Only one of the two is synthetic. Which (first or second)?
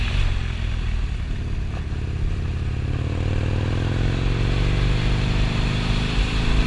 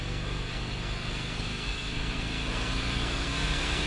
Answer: second